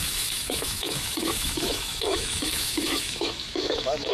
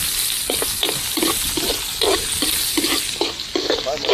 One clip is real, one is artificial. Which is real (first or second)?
second